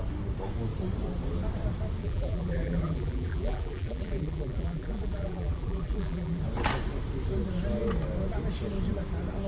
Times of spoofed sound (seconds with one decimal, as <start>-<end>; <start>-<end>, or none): 2.0-6.4